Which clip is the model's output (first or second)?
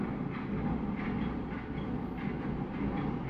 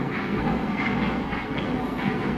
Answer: second